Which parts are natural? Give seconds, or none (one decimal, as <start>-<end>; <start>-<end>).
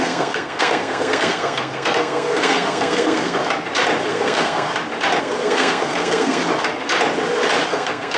3.4-4.1; 4.7-5.2; 6.4-7.7